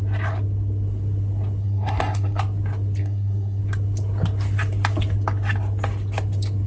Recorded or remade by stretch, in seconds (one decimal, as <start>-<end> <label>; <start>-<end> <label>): 0.0-1.6 recorded; 1.6-2.4 remade; 2.4-3.0 recorded; 3.0-3.6 remade; 3.6-6.7 recorded